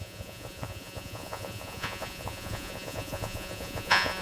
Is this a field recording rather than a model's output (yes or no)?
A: no